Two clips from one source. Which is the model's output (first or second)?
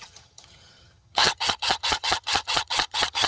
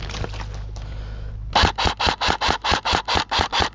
first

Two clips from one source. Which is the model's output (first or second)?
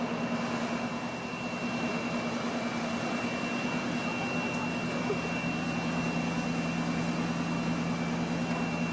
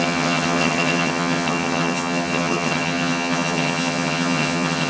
second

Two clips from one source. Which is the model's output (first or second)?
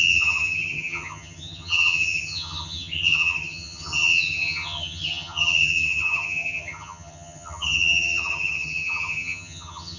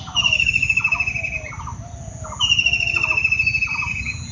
first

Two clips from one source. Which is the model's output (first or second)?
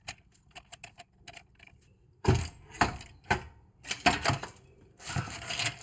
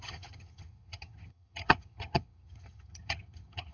second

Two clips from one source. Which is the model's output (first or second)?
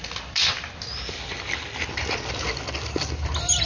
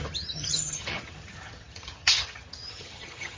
second